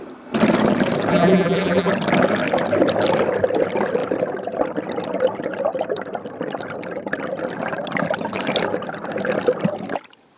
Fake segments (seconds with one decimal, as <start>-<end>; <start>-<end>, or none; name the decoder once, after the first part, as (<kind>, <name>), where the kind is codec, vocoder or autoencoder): 1.1-1.9 (vocoder, BigVGAN v2)